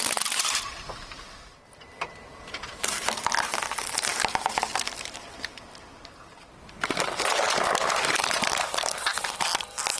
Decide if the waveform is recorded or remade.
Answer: remade